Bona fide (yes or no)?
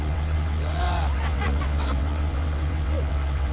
no